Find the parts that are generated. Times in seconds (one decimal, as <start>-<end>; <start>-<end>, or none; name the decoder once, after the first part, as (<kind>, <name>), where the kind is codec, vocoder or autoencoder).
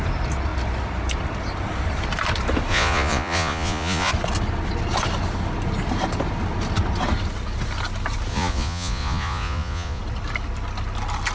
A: 2.7-4.1 (vocoder, Vocos); 8.3-10.0